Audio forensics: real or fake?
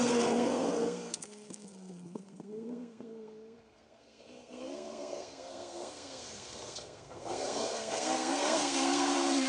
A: fake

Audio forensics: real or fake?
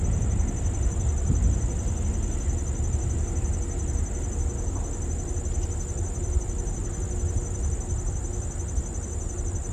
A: real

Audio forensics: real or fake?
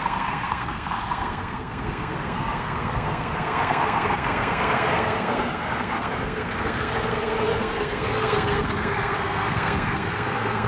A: fake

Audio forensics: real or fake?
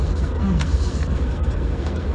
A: fake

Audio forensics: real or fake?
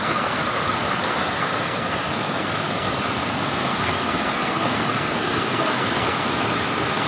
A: fake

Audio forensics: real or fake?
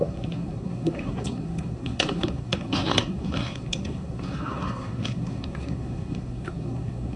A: fake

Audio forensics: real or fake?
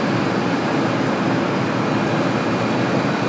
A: real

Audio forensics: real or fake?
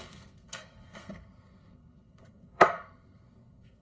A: fake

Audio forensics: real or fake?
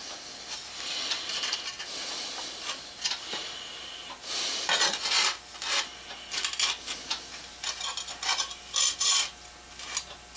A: real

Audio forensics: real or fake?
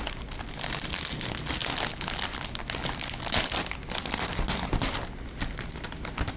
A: real